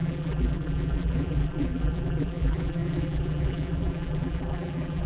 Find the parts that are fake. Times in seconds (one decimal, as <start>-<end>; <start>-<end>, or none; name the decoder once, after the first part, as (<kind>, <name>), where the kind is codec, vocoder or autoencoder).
0.0-5.1 (vocoder, BigVGAN v2)